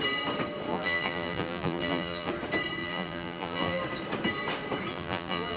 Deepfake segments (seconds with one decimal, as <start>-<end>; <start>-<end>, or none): 0.7-2.3; 2.8-3.8; 4.9-5.6